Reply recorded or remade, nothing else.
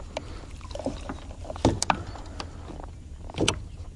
recorded